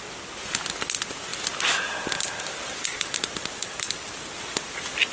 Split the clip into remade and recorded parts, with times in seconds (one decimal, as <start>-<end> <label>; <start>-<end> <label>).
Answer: 0.0-5.1 recorded